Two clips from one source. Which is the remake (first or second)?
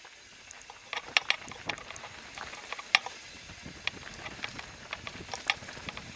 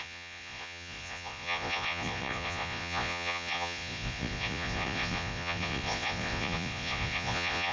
second